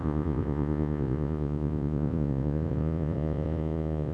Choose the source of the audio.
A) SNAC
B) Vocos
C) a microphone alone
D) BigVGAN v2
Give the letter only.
B